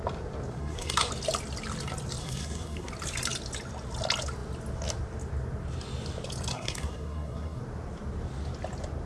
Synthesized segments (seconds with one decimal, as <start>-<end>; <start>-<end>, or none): 0.5-1.1; 2.2-2.9; 6.5-7.6